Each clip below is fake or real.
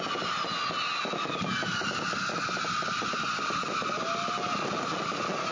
real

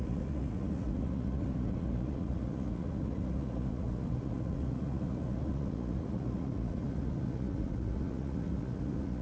fake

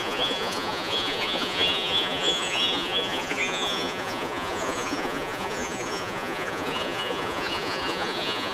fake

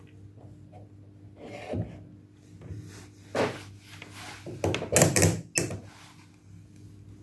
real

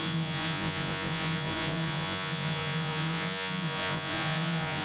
fake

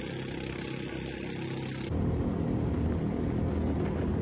real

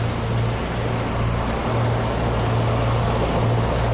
real